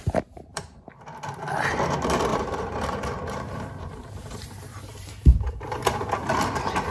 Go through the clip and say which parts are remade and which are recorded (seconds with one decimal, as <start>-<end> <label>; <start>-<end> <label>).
0.0-0.5 recorded; 0.5-1.0 remade; 1.0-2.3 recorded; 2.3-5.5 remade; 5.5-6.9 recorded